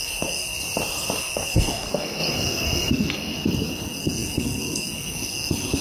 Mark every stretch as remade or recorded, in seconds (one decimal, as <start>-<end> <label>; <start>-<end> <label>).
0.0-0.6 remade; 0.6-1.2 recorded; 1.2-5.8 remade